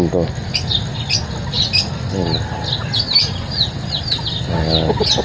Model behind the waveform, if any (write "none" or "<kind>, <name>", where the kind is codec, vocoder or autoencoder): none